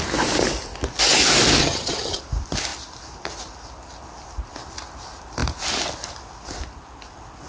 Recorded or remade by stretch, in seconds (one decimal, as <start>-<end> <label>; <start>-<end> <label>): 0.0-1.6 recorded; 1.6-2.2 remade; 2.2-7.5 recorded